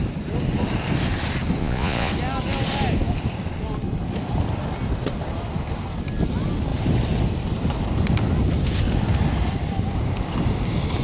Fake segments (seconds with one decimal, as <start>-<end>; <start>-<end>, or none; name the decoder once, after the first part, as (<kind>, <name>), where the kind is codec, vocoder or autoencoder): 1.6-2.1 (vocoder, Vocos)

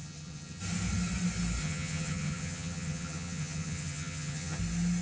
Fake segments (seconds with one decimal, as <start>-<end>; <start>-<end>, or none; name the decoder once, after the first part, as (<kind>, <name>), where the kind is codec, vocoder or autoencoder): 0.0-0.6 (vocoder, HiFi-GAN); 1.6-4.6

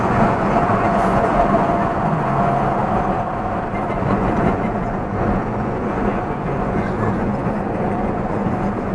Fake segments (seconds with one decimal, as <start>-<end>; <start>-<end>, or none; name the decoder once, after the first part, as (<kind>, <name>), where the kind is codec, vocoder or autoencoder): 0.0-2.8 (vocoder, Vocos); 3.9-8.9

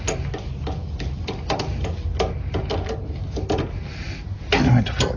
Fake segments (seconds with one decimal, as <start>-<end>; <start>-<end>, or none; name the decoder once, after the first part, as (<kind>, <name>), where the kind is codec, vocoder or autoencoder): none

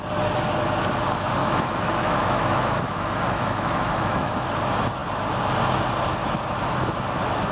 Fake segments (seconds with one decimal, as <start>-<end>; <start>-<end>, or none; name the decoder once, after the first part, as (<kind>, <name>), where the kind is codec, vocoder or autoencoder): 1.4-4.3 (autoencoder, DAC-VAE)